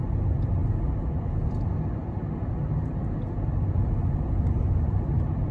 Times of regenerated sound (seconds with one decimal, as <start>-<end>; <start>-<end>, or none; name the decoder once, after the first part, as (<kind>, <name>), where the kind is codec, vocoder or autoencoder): none